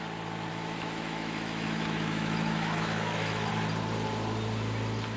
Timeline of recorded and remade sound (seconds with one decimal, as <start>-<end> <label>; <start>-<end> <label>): 0.0-0.5 recorded; 0.5-3.5 remade; 3.5-5.2 recorded